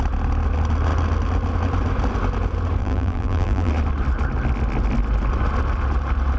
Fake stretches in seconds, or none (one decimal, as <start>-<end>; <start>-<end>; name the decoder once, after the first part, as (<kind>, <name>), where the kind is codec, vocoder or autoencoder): 2.8-3.7 (vocoder, BigVGAN v2)